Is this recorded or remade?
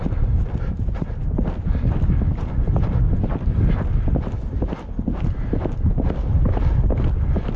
recorded